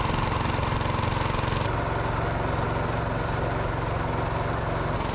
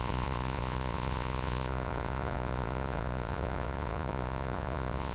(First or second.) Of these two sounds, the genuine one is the first